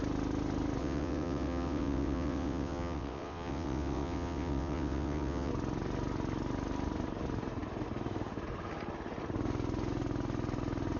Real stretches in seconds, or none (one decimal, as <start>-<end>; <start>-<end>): 0.0-0.8; 5.5-11.0